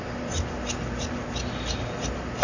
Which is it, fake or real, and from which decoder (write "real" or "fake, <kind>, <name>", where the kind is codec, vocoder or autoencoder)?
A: real